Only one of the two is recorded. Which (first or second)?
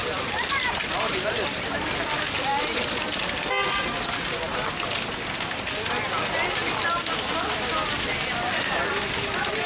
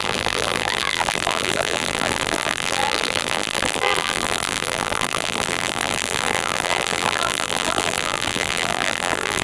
first